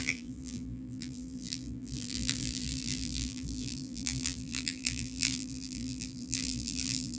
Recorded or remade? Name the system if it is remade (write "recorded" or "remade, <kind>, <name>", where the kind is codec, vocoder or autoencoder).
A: remade, vocoder, BigVGAN v2